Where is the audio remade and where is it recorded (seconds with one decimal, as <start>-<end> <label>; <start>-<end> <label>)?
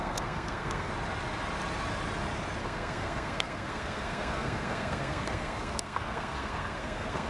0.0-0.9 remade; 0.9-2.6 recorded; 2.6-7.3 remade